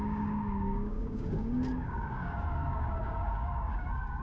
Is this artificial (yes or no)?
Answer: yes